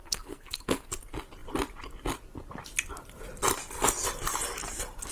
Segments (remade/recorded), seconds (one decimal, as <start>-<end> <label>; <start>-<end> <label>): 0.0-0.9 remade; 0.9-5.1 recorded